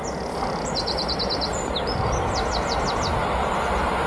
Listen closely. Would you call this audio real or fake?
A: real